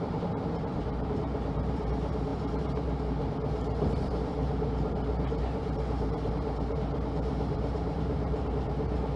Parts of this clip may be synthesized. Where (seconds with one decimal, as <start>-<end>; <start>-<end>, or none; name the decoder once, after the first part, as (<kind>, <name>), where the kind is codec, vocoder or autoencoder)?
0.0-9.2 (vocoder, BigVGAN v2)